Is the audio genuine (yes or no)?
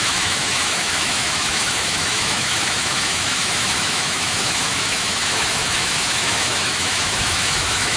no